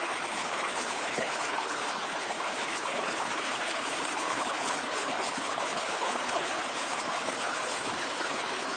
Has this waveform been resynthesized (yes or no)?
yes